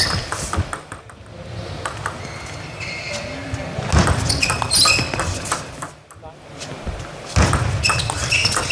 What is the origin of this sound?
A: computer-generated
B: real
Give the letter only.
B